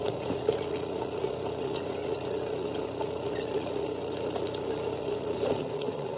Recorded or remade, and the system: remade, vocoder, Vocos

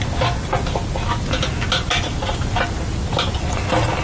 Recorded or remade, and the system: recorded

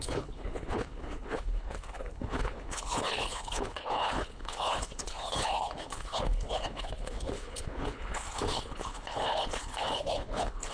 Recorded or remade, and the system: remade, codec, HILCodec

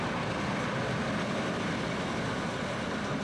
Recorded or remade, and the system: recorded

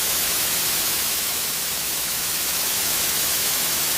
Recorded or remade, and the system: remade, autoencoder, DAC-VAE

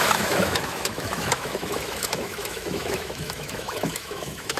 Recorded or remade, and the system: remade, autoencoder, DAC-VAE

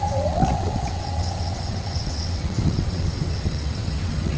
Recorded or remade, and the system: remade, vocoder, WaveNeXt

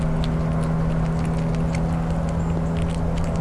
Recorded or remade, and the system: recorded